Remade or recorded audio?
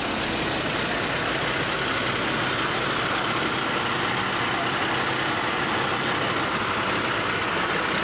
recorded